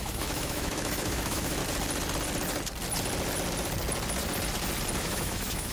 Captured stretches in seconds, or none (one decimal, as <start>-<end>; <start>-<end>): 1.6-5.0